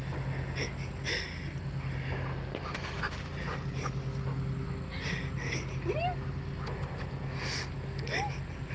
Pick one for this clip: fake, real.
real